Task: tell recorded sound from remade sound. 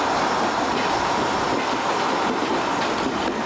recorded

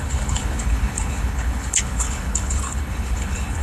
remade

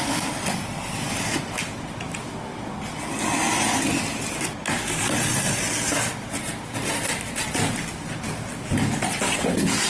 recorded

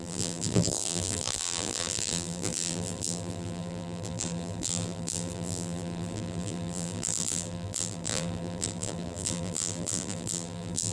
remade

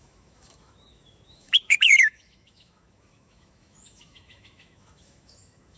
remade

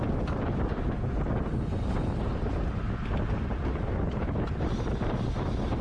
recorded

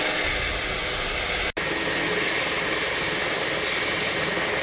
recorded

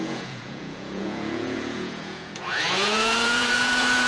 remade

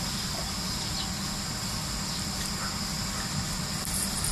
recorded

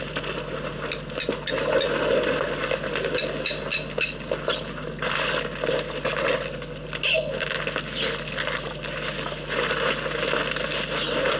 recorded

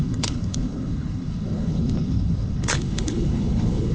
remade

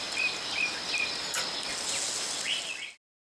recorded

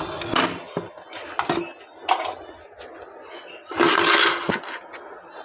recorded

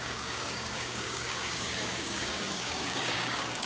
remade